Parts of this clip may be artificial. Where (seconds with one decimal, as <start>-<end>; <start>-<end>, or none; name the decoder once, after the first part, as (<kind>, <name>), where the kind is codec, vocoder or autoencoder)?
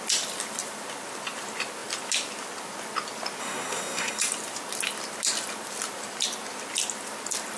3.4-4.2 (codec, SNAC)